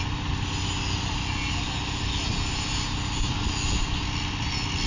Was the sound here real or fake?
real